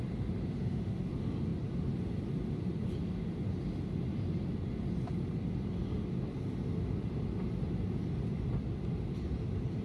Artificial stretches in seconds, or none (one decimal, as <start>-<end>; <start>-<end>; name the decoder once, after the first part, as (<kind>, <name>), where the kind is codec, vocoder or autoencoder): 0.6-1.1 (autoencoder, DAC-VAE)